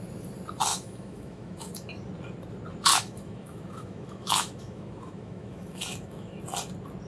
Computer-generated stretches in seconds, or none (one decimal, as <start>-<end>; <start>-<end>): 0.7-1.9; 2.9-6.4